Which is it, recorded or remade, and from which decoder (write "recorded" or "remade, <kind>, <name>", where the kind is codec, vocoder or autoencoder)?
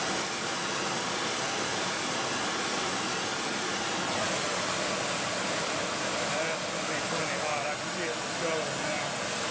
recorded